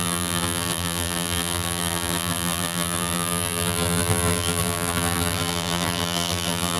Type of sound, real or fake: fake